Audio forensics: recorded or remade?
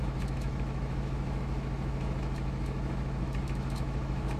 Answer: remade